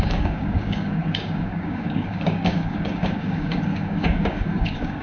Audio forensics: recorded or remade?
remade